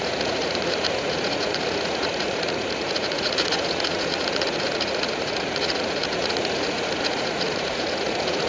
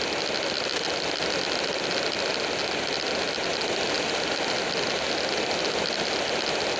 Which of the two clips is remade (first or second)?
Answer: first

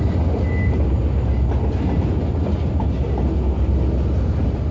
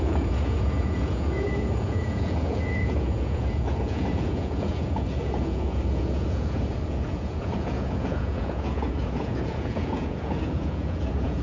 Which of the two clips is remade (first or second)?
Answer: second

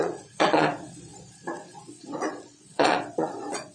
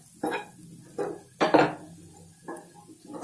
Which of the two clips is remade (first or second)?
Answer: first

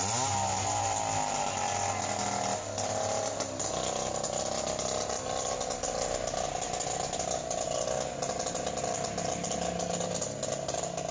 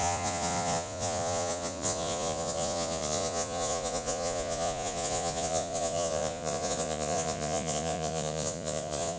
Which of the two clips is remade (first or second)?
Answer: second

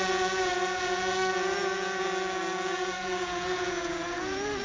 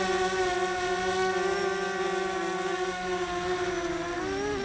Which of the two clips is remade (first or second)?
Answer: first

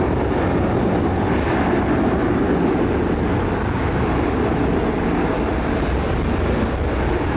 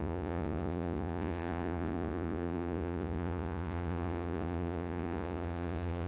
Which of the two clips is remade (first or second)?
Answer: second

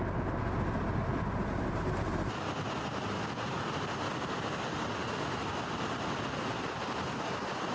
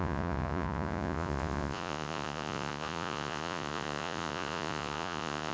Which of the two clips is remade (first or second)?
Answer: second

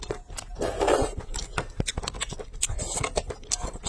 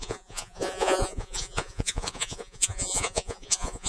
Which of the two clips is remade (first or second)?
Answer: second